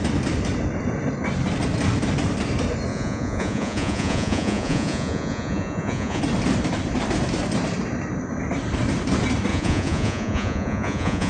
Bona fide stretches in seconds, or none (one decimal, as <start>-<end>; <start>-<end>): 0.0-2.9; 6.2-9.5